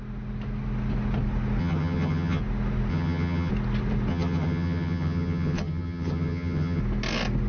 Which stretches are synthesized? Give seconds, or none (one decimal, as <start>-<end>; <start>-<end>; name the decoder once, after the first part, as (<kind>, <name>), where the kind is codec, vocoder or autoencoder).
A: 1.6-2.4 (vocoder, HiFi-GAN); 2.9-3.5; 4.1-6.8